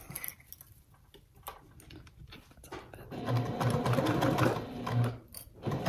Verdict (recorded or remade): recorded